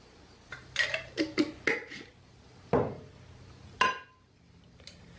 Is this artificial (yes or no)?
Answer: no